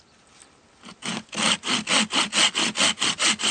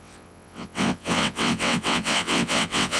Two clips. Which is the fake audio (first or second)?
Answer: second